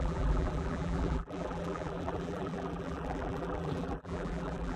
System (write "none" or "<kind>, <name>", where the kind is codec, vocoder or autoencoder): vocoder, BigVGAN v2